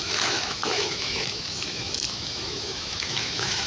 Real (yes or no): no